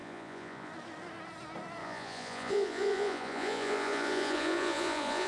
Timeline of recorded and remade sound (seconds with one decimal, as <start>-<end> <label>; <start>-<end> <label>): 0.0-0.7 remade; 0.7-1.8 recorded; 1.8-5.3 remade